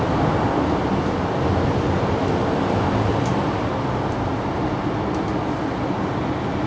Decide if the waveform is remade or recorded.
recorded